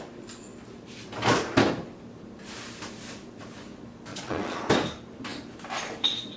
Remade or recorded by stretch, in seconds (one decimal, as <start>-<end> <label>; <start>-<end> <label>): 0.0-4.1 recorded; 4.1-4.6 remade; 4.6-6.4 recorded